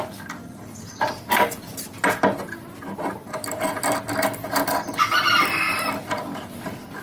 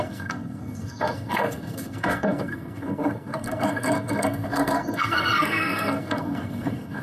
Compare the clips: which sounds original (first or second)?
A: first